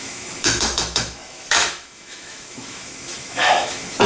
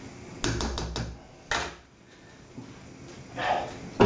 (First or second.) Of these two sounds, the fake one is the first